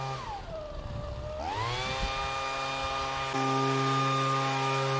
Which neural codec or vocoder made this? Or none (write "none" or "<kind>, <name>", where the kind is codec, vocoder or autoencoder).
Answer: none